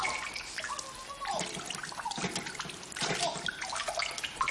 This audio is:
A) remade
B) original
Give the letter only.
B